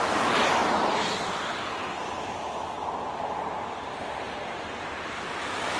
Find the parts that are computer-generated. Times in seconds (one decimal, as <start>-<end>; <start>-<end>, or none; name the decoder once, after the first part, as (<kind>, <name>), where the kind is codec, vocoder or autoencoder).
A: 2.8-4.7 (vocoder, BigVGAN v2)